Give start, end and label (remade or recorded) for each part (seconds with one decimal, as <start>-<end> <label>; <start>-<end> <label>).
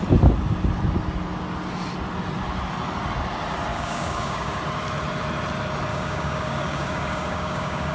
0.0-3.7 recorded; 3.7-4.6 remade; 4.6-5.9 recorded; 5.9-7.9 remade